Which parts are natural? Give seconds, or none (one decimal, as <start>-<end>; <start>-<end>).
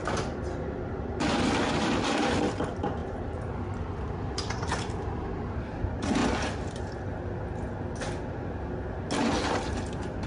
6.2-10.3